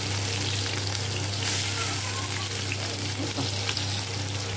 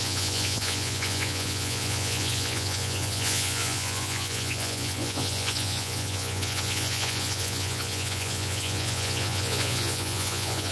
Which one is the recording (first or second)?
first